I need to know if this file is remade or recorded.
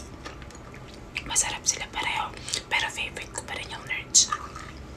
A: recorded